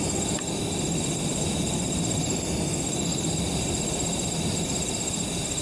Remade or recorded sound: recorded